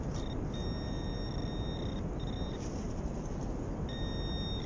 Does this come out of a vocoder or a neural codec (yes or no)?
no